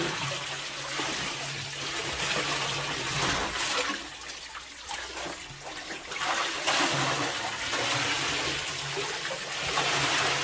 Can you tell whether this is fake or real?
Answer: real